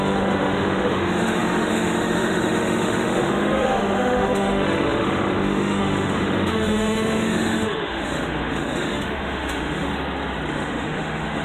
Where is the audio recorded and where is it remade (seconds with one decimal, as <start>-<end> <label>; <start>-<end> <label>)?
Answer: 0.0-9.9 remade; 9.9-10.5 recorded; 10.5-11.4 remade